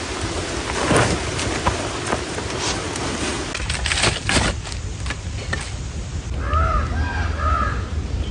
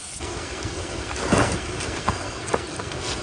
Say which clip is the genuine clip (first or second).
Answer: first